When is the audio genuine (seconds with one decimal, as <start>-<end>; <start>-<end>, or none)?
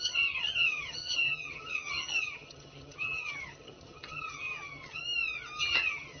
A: 5.0-5.6